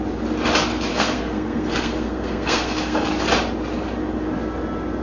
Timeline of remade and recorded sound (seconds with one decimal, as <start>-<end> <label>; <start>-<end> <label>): 0.0-0.9 recorded; 0.9-3.1 remade; 3.1-5.0 recorded